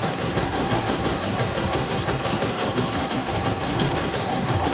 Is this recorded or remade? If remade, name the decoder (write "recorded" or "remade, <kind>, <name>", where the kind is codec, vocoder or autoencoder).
remade, codec, SNAC